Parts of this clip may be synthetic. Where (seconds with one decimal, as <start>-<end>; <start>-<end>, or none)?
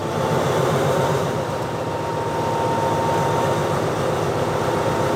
none